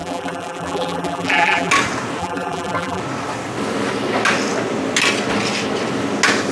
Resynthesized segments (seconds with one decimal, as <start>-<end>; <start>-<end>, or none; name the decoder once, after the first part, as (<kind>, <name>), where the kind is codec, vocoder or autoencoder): 0.0-1.7 (vocoder, BigVGAN v2); 2.2-3.0

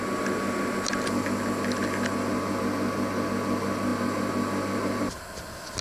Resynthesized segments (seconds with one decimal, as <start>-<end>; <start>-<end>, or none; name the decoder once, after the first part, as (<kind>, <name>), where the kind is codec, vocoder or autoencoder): none

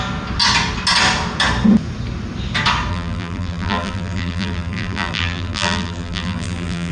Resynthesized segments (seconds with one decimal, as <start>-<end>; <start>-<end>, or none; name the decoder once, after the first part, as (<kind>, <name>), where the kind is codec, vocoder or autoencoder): 2.9-6.9 (vocoder, BigVGAN v2)